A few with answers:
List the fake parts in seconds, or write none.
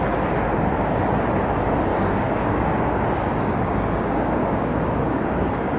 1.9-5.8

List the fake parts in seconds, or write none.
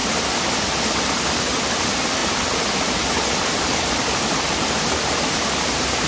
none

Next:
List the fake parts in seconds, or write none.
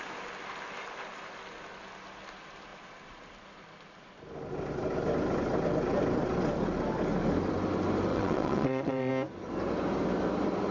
8.1-9.1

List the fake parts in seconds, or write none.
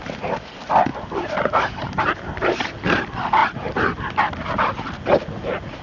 0.0-0.5; 0.9-2.6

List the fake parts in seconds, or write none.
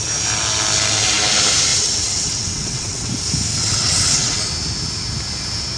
1.7-3.1; 3.5-4.4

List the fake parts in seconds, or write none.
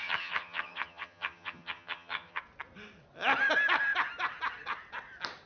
0.0-2.4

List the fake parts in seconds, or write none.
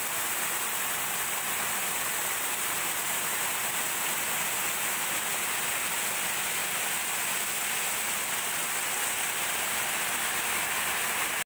none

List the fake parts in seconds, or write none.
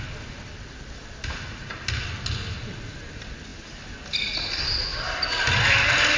none